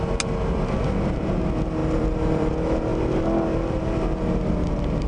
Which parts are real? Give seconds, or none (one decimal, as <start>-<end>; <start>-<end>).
0.0-1.8; 2.5-5.1